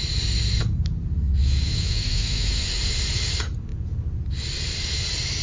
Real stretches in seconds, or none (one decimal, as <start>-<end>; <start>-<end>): 0.0-1.4; 2.6-5.4